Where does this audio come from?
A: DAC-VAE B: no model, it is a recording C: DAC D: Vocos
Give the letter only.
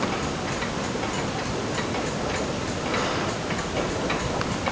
B